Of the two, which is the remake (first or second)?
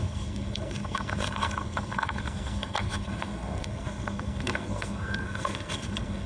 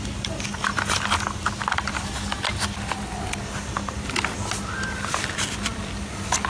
first